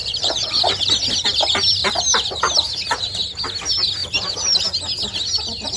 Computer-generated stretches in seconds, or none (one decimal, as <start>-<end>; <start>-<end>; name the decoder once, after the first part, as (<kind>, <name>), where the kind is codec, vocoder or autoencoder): 0.0-0.9 (vocoder, BigVGAN v2); 4.0-4.6